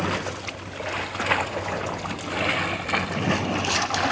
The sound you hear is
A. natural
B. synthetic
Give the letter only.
A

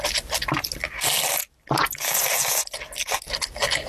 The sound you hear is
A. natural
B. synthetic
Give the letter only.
A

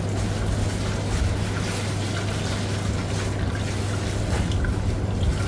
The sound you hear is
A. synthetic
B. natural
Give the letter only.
B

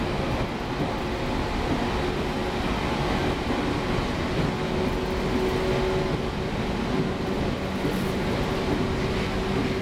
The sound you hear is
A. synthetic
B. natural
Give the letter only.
B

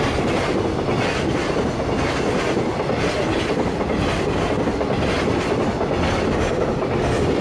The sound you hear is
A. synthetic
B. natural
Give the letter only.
B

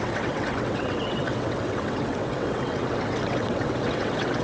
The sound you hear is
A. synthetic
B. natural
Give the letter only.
A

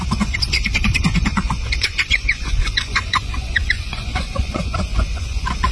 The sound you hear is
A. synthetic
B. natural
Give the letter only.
A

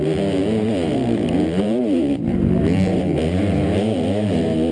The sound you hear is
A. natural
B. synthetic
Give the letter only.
B